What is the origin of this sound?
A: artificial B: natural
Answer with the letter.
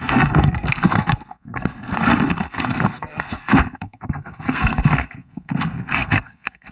A